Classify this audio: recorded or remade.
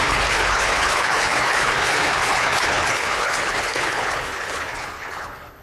remade